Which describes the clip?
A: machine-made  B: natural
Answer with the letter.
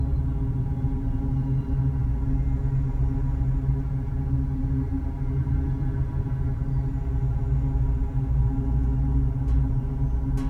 B